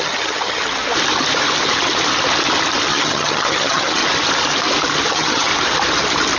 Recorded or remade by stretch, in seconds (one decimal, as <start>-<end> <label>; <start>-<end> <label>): 0.0-0.6 remade; 0.6-2.9 recorded; 2.9-4.0 remade; 4.0-5.1 recorded; 5.1-5.5 remade; 5.5-6.4 recorded